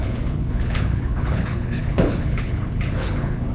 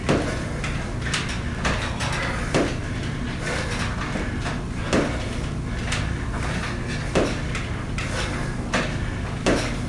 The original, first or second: second